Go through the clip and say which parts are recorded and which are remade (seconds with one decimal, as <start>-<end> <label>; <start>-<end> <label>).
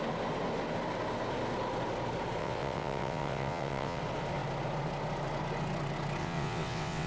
0.0-2.4 recorded; 2.4-4.0 remade; 4.0-6.2 recorded; 6.2-7.1 remade